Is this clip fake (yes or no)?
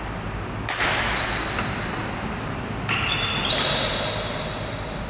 no